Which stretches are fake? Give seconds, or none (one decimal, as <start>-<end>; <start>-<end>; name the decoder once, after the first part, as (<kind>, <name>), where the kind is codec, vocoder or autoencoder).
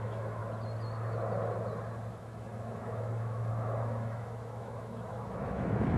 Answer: 0.0-0.4 (autoencoder, DAC-VAE); 2.1-6.0